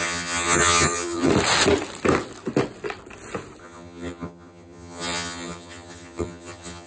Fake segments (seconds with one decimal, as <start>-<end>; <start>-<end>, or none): 0.0-1.3; 3.6-6.9